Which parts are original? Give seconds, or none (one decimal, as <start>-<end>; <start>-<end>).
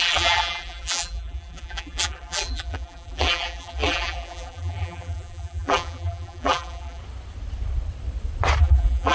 7.0-8.6